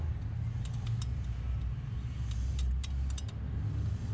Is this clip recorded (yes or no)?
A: yes